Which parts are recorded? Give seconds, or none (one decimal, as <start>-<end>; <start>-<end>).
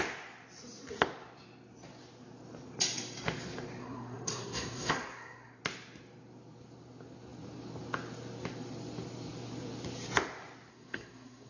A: 0.0-3.8; 5.6-10.7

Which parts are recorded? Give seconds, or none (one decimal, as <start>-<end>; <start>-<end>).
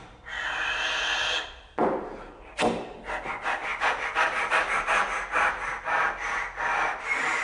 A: 0.0-7.4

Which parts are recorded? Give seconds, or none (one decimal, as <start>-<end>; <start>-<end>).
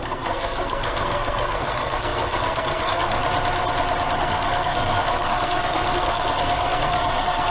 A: 3.2-4.2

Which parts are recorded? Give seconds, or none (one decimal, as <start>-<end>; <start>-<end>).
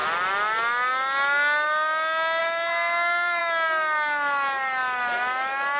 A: 0.0-5.8